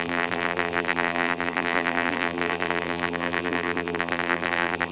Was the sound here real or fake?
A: fake